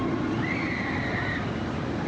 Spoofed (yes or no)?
yes